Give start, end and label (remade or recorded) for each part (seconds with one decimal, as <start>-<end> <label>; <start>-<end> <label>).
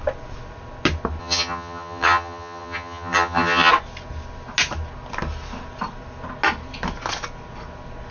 0.0-1.2 recorded; 1.2-3.7 remade; 3.7-8.1 recorded